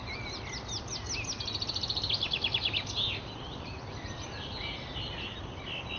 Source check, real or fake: real